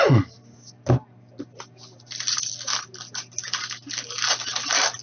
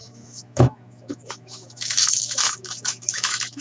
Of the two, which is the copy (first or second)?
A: second